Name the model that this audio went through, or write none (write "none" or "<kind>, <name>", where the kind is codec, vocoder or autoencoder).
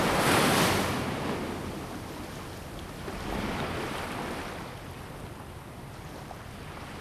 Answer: none